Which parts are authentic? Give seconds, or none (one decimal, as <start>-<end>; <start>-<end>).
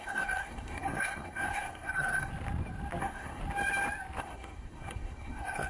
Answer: 2.3-3.0; 3.4-4.2